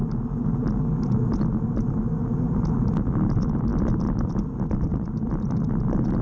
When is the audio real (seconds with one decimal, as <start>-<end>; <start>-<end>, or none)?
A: 0.0-2.9